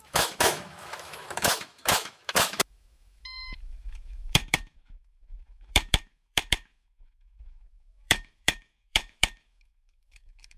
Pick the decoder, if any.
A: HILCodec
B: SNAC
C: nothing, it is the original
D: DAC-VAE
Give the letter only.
D